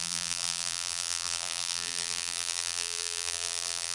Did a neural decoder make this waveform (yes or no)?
yes